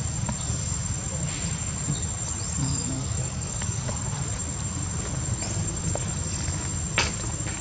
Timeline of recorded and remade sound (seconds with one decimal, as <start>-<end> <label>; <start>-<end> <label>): 0.0-2.6 recorded; 2.6-3.9 remade; 3.9-7.6 recorded